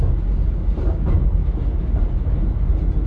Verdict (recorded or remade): recorded